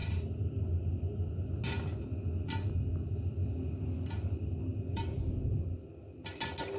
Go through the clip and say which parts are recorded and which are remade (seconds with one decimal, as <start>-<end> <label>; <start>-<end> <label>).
0.0-1.6 remade; 1.6-4.7 recorded; 4.7-5.9 remade; 5.9-6.8 recorded